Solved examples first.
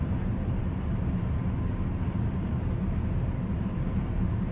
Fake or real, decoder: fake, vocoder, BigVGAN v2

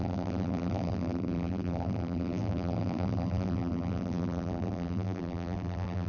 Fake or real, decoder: fake, vocoder, BigVGAN v2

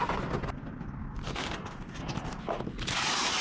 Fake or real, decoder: real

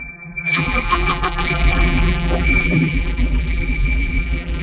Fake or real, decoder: fake, vocoder, BigVGAN v2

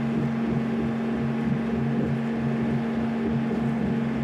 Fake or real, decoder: real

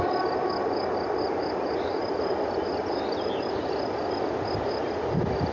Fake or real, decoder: real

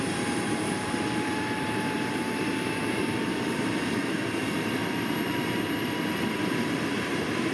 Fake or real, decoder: fake, vocoder, BigVGAN v2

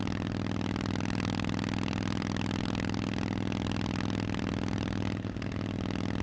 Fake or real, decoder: real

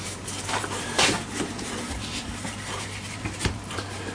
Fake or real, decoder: fake, vocoder, BigVGAN v2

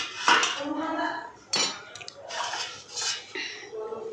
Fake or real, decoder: real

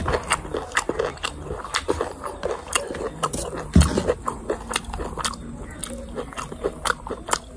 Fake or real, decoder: real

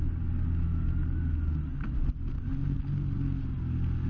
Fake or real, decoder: real